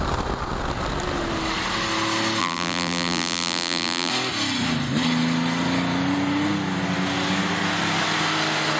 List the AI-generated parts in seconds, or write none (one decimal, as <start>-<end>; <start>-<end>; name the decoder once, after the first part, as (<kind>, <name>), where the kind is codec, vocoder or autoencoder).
2.4-4.1 (vocoder, BigVGAN v2)